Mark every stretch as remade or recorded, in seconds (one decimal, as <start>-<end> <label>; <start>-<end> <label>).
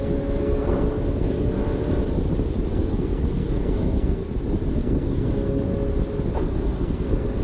0.0-1.6 remade; 1.6-2.7 recorded; 2.7-4.2 remade; 4.2-4.7 recorded; 4.7-5.7 remade; 5.7-6.3 recorded; 6.3-7.4 remade